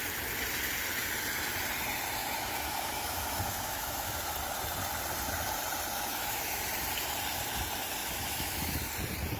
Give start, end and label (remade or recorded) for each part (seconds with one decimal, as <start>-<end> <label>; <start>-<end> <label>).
0.0-2.2 recorded; 2.2-4.2 remade; 4.2-6.1 recorded; 6.1-6.7 remade; 6.7-8.0 recorded; 8.0-8.9 remade; 8.9-9.4 recorded